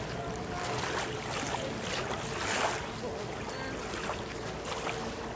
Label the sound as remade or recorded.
recorded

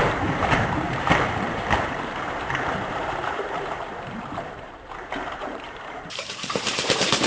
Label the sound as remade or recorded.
remade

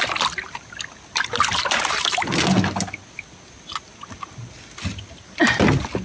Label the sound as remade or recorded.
recorded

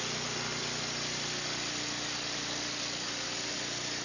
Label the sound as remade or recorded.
recorded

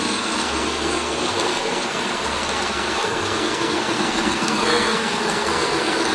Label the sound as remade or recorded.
remade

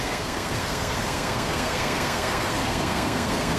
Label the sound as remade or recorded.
remade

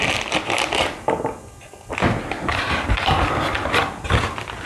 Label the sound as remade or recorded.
recorded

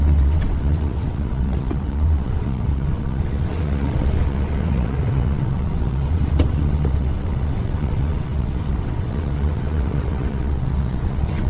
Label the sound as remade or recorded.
remade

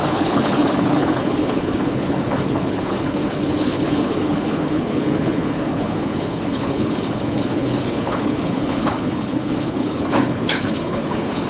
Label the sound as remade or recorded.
remade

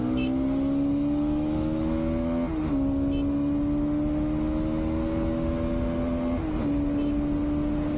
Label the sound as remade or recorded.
recorded